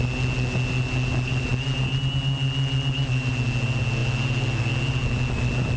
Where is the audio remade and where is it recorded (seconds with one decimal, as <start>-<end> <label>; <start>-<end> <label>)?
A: 0.0-5.8 recorded